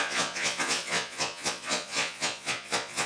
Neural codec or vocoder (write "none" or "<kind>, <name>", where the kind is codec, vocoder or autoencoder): vocoder, Vocos